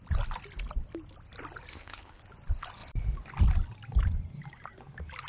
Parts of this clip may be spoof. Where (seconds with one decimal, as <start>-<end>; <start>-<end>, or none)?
1.7-2.2